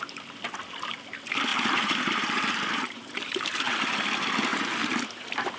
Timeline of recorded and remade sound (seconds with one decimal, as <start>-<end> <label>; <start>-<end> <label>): 0.0-1.5 recorded; 1.5-3.8 remade; 3.8-4.5 recorded; 4.5-5.6 remade